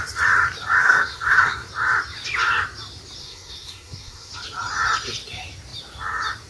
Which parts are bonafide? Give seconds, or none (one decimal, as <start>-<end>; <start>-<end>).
0.0-0.8; 1.7-3.2; 4.3-6.5